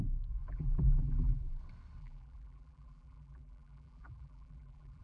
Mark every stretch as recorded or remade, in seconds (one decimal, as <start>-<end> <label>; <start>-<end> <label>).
0.0-0.4 recorded; 0.4-1.6 remade; 1.6-2.0 recorded; 2.0-5.0 remade